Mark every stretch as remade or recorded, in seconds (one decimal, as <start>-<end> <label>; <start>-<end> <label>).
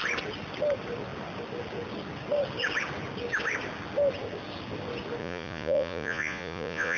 0.0-5.2 recorded; 5.2-7.0 remade